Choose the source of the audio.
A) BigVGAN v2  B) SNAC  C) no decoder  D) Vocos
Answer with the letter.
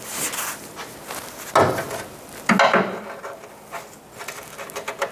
C